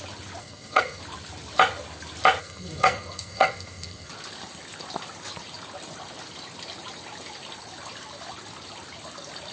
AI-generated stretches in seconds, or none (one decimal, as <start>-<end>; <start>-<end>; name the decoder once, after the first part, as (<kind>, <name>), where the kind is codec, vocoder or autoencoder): 0.4-1.0 (codec, SNAC); 2.4-4.1